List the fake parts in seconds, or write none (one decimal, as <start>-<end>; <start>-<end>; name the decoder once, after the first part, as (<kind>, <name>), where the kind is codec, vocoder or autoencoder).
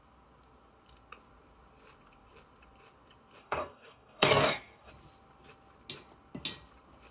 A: 3.4-4.9 (codec, DAC)